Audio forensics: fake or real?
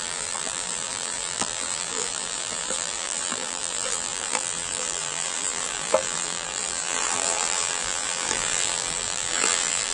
fake